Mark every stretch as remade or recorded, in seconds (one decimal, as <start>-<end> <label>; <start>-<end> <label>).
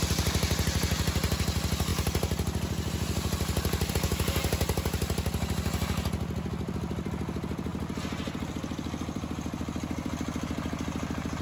0.0-11.4 recorded